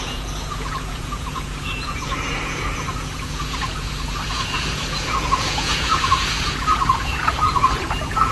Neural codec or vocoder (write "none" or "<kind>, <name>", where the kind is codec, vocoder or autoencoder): vocoder, Vocos